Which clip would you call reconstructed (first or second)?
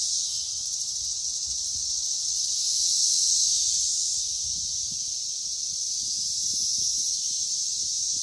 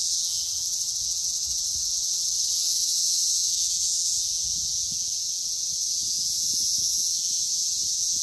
second